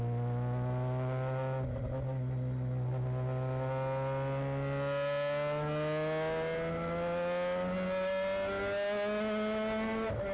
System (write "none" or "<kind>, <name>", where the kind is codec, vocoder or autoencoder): none